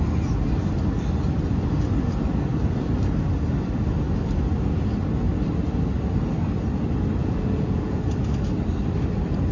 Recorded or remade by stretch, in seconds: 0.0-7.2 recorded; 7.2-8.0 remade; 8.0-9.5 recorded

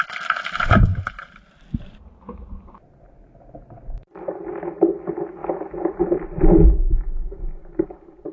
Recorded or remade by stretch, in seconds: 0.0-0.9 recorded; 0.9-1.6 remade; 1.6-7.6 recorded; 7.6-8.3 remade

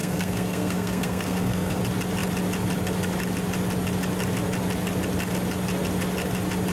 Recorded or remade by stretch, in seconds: 0.0-1.8 remade; 1.8-6.7 recorded

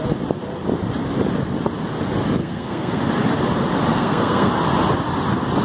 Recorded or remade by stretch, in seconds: 0.0-2.4 recorded; 2.4-3.0 remade; 3.0-3.9 recorded; 3.9-4.5 remade; 4.5-5.6 recorded

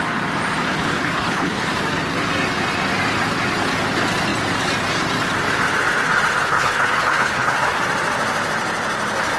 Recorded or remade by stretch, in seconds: 0.0-0.7 recorded; 0.7-1.7 remade; 1.7-6.4 recorded; 6.4-7.8 remade; 7.8-9.4 recorded

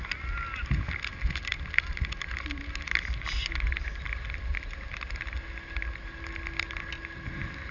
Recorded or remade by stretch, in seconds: 0.0-7.7 recorded

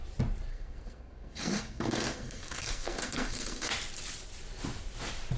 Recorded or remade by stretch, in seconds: 0.0-0.5 recorded; 0.5-3.7 remade; 3.7-5.4 recorded